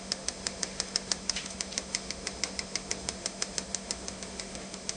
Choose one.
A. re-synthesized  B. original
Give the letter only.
A